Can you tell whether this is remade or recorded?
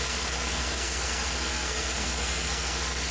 remade